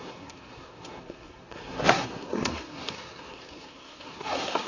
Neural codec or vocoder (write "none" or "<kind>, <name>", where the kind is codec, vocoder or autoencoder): codec, SNAC